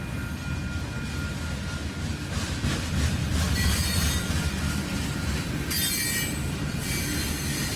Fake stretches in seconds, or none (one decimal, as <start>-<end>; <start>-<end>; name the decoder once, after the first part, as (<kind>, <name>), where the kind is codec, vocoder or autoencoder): 3.2-4.3 (vocoder, BigVGAN v2)